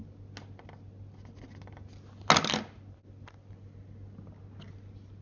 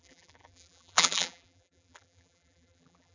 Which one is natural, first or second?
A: first